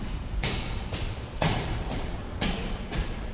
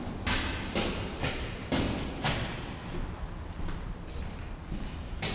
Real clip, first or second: second